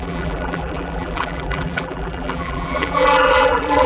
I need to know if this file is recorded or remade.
remade